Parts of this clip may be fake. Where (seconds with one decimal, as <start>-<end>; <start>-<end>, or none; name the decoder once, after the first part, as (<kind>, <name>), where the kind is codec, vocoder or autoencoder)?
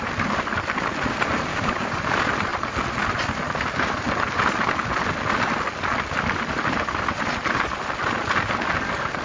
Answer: 1.5-2.0 (codec, DAC)